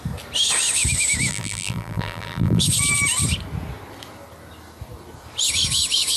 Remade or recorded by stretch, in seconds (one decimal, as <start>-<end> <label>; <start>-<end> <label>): 0.0-1.3 recorded; 1.3-2.6 remade; 2.6-6.2 recorded